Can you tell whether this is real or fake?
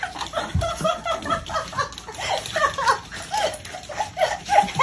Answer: real